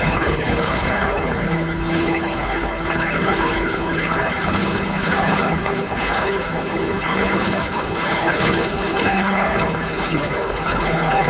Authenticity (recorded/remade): remade